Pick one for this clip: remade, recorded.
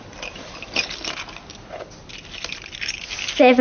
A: recorded